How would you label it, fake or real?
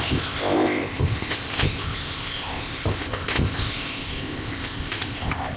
fake